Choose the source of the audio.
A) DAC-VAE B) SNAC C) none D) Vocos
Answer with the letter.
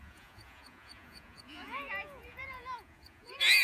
D